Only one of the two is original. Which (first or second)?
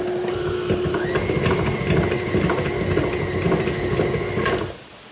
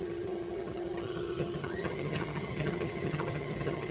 first